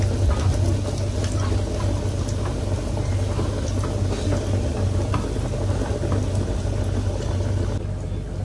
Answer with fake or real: real